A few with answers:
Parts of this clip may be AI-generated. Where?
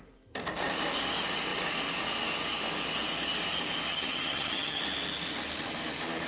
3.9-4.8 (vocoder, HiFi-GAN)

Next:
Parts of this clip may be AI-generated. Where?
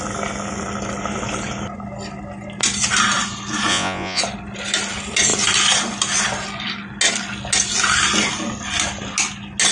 3.7-4.2 (vocoder, Vocos)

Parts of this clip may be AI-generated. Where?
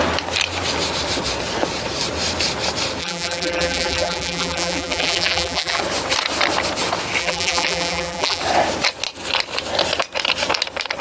3.0-5.8 (vocoder, BigVGAN v2); 7.2-8.4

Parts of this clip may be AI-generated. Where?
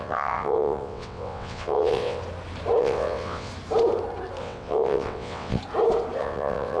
0.0-2.2 (vocoder, WaveNeXt); 2.8-3.5; 4.4-5.6; 6.2-6.8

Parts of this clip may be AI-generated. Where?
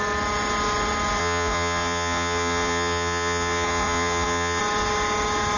1.2-4.6 (vocoder, Vocos)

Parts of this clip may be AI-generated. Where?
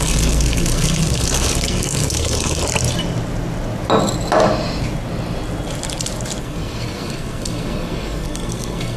0.0-2.6 (codec, SNAC); 6.4-9.0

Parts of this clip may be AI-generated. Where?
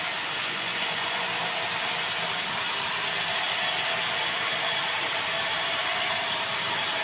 0.4-1.3 (vocoder, Vocos)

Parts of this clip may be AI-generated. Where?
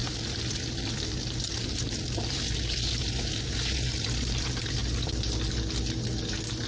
none